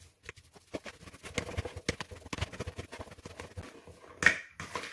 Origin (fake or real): real